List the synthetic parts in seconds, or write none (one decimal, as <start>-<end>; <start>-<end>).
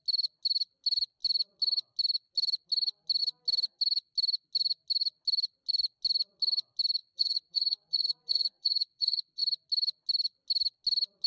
7.0-9.4